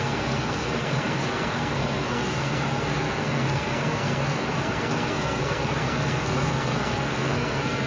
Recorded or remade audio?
remade